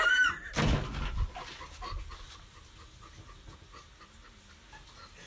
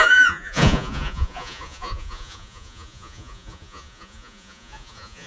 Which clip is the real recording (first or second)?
first